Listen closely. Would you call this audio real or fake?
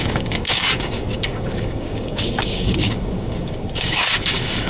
fake